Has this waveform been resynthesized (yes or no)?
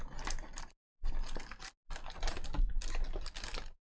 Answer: no